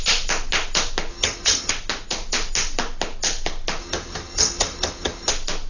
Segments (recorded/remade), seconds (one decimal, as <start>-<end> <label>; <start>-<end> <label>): 0.0-1.1 recorded; 1.1-1.7 remade; 1.7-3.8 recorded; 3.8-5.3 remade; 5.3-5.7 recorded